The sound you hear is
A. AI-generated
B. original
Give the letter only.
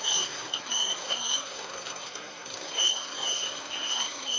A